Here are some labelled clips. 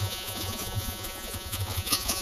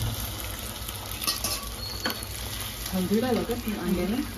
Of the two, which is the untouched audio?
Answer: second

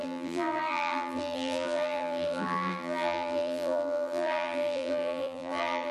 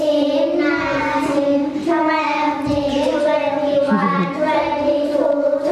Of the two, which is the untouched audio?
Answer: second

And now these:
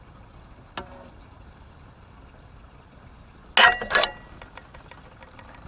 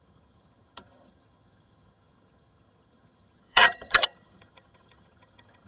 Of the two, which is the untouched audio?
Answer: first